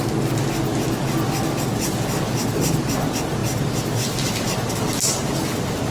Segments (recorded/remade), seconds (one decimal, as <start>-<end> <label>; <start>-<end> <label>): 0.0-5.9 recorded